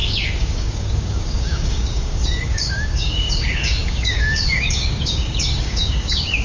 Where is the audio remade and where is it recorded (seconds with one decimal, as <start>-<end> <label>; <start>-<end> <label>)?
0.0-6.4 remade